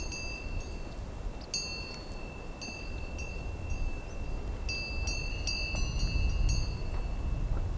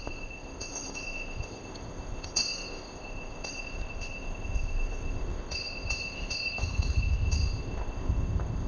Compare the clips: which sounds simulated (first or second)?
second